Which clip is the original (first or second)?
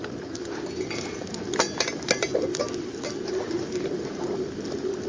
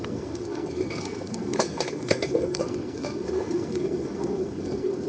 first